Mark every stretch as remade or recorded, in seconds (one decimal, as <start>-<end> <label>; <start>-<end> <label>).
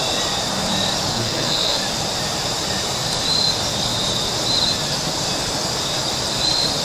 0.0-1.1 recorded; 1.1-1.8 remade; 1.8-6.8 recorded